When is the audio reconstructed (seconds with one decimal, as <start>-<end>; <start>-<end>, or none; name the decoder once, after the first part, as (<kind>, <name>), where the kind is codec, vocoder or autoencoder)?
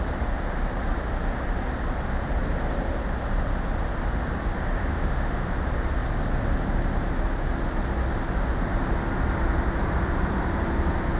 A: 4.8-5.5 (autoencoder, DAC-VAE)